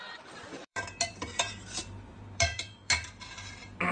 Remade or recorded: remade